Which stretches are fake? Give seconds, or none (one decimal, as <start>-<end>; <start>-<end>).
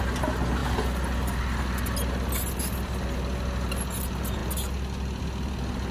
none